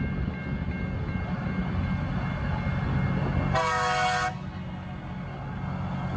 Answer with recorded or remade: recorded